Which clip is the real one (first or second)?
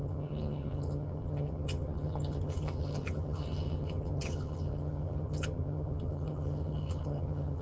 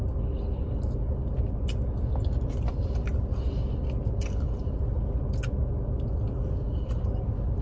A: second